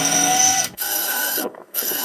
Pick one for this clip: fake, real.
fake